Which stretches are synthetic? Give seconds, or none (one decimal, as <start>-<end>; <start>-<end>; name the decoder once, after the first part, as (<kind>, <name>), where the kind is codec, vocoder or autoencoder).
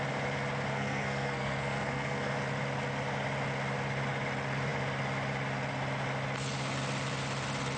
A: 0.7-2.3 (codec, SNAC)